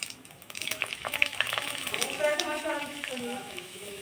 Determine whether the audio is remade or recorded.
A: remade